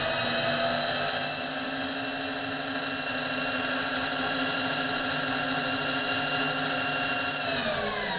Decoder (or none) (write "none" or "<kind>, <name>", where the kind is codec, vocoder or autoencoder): none